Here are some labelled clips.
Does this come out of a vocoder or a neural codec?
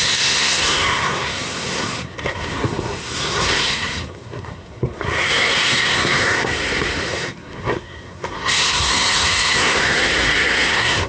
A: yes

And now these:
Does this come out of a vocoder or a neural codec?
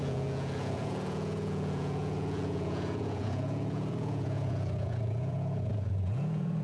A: yes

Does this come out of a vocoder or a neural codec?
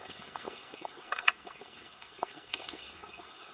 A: yes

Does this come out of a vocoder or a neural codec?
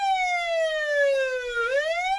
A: yes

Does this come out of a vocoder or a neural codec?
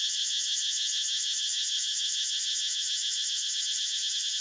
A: yes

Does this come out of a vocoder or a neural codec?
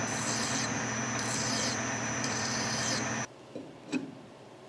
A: yes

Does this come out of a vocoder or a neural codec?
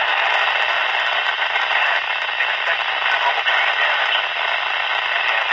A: no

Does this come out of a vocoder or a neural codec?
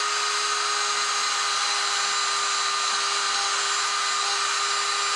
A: no